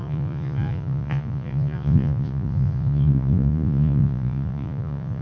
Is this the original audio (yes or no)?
no